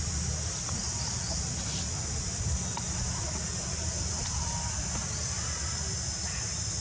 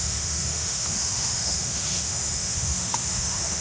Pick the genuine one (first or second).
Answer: first